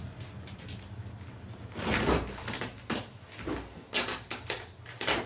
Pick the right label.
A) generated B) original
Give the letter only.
B